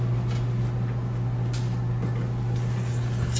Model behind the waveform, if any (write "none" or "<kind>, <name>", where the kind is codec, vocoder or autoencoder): none